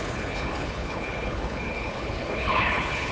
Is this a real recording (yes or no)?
no